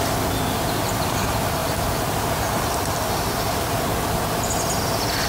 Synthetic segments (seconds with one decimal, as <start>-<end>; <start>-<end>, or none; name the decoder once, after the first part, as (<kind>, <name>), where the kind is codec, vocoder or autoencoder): none